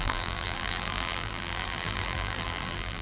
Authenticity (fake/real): fake